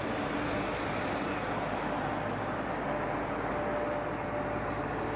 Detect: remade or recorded recorded